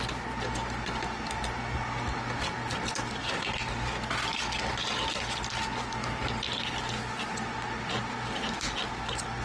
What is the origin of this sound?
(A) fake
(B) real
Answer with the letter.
B